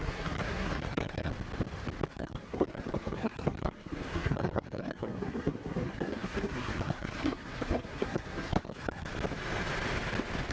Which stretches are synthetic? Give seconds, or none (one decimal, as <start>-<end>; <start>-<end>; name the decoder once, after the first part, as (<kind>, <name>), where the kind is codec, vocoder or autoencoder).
0.0-1.3 (codec, SNAC); 2.1-9.1